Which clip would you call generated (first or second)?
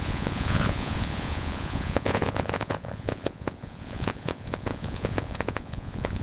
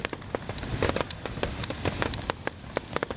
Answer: first